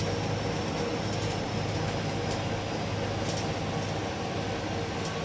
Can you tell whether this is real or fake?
real